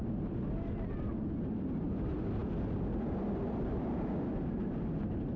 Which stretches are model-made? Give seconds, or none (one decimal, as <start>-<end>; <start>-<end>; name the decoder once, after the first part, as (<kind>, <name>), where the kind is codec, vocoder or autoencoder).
none